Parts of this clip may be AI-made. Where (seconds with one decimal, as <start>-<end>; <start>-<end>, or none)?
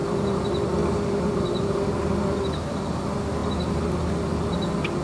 none